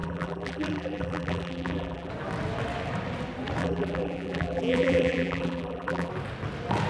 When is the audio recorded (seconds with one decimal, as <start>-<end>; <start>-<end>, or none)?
2.1-3.6; 6.1-6.9